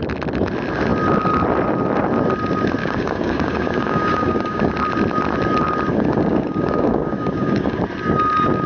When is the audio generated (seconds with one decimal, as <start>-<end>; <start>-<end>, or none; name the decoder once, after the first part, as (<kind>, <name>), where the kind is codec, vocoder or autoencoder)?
2.8-4.7 (codec, DAC); 5.9-7.8